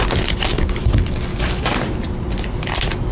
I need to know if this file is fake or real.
real